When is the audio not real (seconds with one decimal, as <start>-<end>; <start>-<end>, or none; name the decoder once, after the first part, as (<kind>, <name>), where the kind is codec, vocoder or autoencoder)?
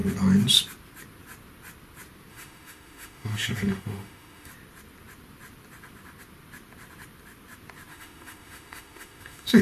2.3-4.5 (autoencoder, DAC-VAE); 7.9-9.6